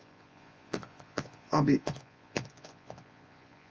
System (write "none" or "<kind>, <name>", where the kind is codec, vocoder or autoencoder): vocoder, Vocos